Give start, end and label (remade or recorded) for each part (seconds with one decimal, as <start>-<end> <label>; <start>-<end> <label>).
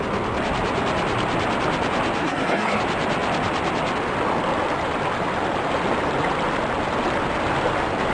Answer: 0.0-2.2 recorded; 2.2-2.8 remade; 2.8-8.1 recorded